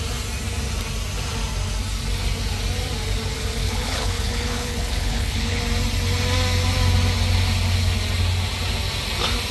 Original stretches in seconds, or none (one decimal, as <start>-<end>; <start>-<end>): 0.0-3.6; 5.6-9.5